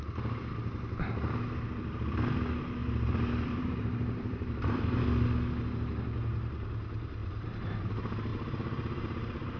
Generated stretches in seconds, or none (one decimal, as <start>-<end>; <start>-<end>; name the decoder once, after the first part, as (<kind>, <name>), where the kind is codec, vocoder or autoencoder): 2.8-5.0 (vocoder, BigVGAN v2); 7.2-7.9; 8.3-9.6